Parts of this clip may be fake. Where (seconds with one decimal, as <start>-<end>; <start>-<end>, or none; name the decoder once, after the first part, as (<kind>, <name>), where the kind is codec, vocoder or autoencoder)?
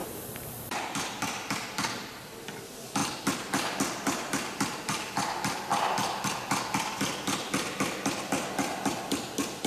0.0-1.0 (vocoder, BigVGAN v2)